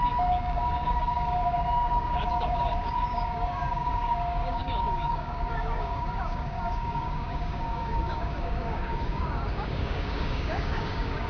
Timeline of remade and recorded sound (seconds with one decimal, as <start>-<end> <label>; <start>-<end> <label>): 0.0-11.3 remade